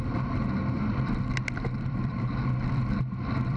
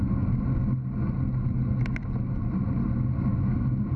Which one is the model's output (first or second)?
first